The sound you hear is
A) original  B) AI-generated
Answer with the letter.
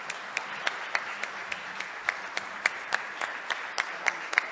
B